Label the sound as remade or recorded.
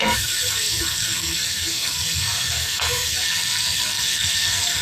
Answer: remade